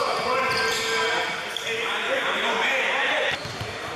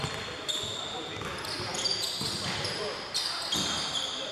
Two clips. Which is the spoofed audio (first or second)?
first